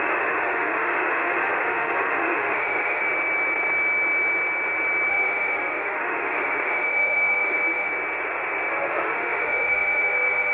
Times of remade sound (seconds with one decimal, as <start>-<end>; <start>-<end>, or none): 0.0-3.0; 5.1-7.9; 8.7-10.5